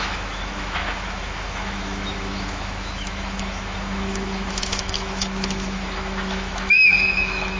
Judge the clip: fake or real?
fake